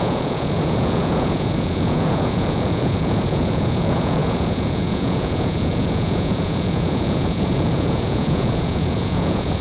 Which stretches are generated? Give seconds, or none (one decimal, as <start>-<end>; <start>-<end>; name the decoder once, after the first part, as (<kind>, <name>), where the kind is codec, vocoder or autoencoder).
0.0-9.6 (vocoder, Vocos)